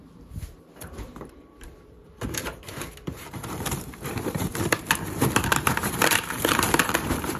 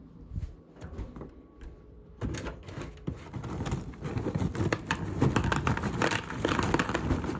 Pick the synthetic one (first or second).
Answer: first